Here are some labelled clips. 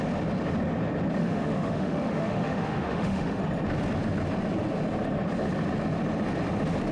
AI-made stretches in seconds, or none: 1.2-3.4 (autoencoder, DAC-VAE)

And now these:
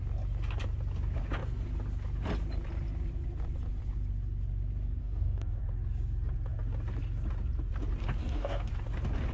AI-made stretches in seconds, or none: 5.0-5.6 (codec, DAC); 8.2-8.7